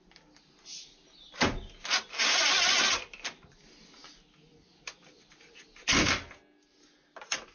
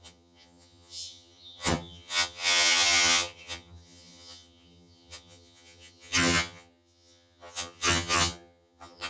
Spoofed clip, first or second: second